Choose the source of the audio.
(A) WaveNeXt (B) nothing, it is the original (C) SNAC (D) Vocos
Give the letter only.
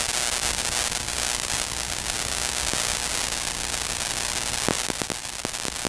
B